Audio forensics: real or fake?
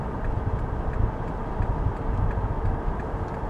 real